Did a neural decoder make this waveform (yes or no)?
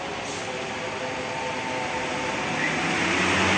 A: no